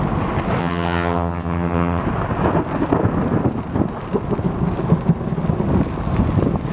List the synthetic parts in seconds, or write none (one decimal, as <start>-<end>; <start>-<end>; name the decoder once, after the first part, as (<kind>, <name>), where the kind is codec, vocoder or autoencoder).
0.6-2.0 (vocoder, HiFi-GAN)